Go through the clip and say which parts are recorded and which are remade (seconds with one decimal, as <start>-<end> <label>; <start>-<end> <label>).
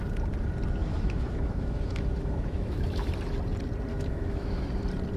0.0-0.8 recorded; 0.8-3.1 remade; 3.1-3.9 recorded; 3.9-4.7 remade; 4.7-5.2 recorded